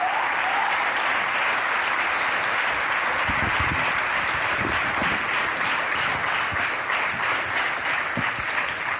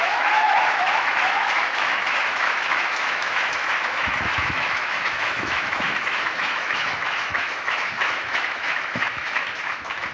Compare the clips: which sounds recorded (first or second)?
first